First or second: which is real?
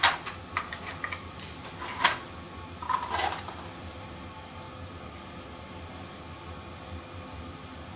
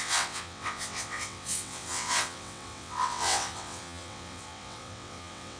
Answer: first